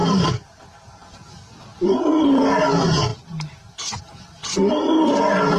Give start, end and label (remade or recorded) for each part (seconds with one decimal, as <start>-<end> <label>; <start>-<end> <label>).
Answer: 0.0-5.6 recorded